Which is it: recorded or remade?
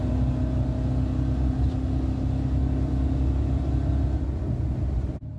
recorded